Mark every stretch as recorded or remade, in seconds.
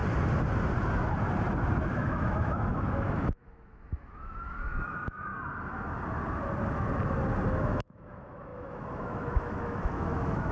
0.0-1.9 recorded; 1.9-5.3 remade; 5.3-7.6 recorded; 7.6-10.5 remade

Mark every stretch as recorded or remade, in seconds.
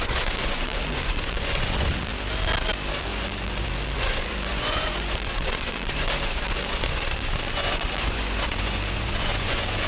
0.0-2.1 remade; 2.1-3.0 recorded; 3.0-9.9 remade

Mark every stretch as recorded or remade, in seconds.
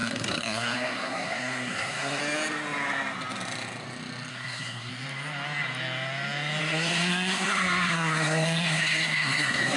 0.0-2.2 remade; 2.2-4.3 recorded; 4.3-4.9 remade; 4.9-6.6 recorded; 6.6-9.8 remade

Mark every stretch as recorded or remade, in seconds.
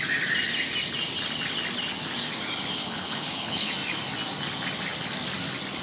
0.0-2.8 recorded; 2.8-3.7 remade; 3.7-5.8 recorded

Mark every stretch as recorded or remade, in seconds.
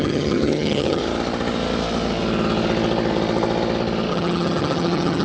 0.0-1.0 remade; 1.0-4.1 recorded; 4.1-5.2 remade